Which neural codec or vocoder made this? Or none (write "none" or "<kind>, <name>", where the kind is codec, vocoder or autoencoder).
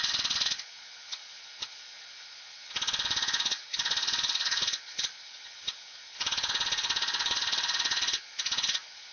vocoder, Vocos